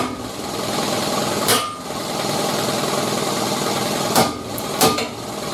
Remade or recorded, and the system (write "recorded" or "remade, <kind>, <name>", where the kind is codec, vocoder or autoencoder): recorded